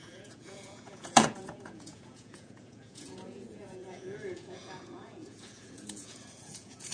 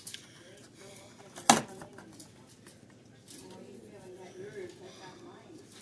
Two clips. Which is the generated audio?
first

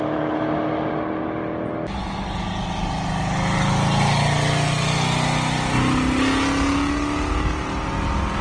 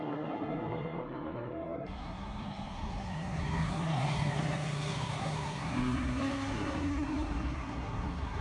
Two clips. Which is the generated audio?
second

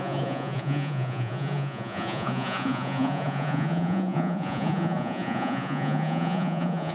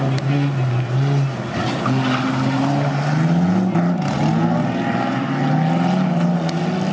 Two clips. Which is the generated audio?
first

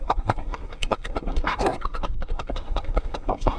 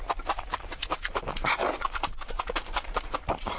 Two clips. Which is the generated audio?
first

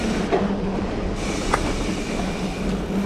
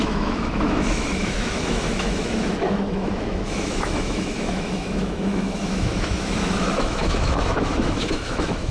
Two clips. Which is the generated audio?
second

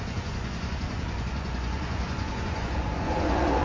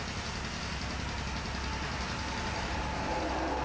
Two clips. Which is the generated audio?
first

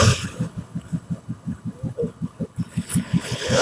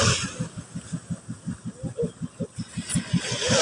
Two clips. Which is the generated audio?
first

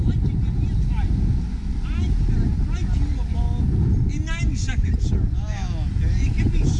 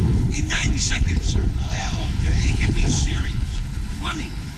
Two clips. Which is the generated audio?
second